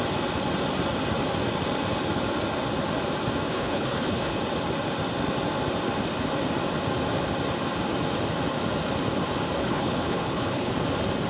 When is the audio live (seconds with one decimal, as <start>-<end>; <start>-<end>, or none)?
0.0-3.5; 4.4-9.6; 10.7-11.3

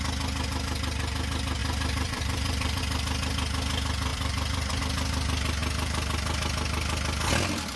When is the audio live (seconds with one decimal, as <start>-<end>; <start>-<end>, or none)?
0.0-1.6; 2.8-4.1; 4.8-7.8

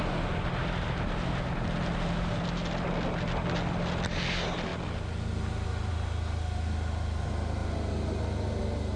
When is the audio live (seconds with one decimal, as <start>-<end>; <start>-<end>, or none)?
0.0-9.0

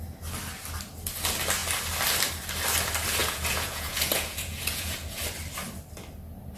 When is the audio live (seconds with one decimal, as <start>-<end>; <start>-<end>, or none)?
0.0-3.2; 5.2-6.6

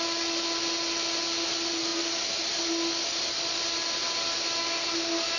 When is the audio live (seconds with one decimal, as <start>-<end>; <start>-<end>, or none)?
0.0-5.4

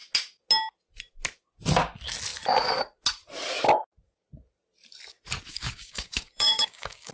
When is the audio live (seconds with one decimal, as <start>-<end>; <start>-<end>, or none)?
0.0-5.5